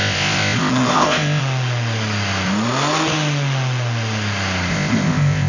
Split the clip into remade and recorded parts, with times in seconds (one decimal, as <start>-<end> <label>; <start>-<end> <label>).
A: 0.0-1.4 remade; 1.4-4.7 recorded; 4.7-5.5 remade